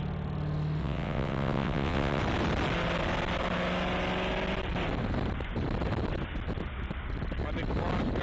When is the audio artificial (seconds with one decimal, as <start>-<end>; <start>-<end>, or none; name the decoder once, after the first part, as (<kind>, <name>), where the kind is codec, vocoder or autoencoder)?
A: 0.8-2.2 (vocoder, WaveNeXt)